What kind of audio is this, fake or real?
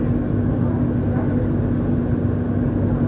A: real